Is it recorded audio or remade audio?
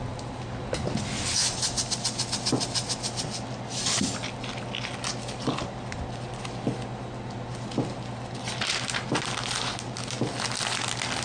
recorded